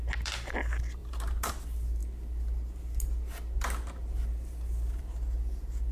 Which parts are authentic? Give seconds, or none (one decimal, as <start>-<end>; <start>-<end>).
0.0-1.0; 1.5-5.9